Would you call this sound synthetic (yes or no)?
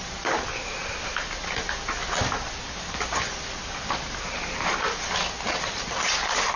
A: no